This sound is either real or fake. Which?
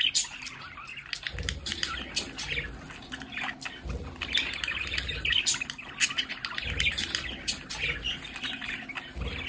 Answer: real